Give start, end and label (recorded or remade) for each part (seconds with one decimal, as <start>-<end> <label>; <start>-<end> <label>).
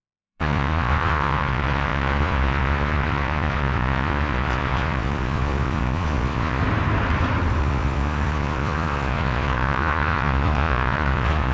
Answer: 0.0-6.6 remade; 6.6-7.6 recorded; 7.6-11.5 remade